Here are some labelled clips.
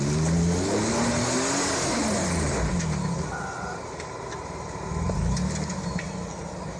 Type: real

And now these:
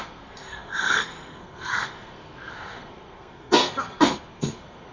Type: fake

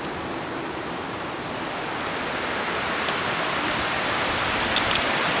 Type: real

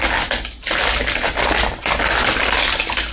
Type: real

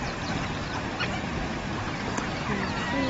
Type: real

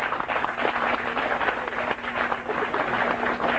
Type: real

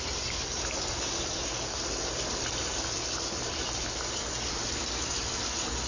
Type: real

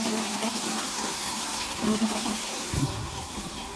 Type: fake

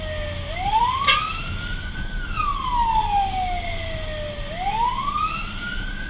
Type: real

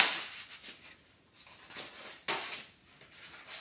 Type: real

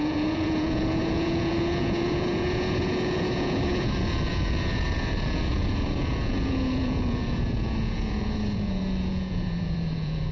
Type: fake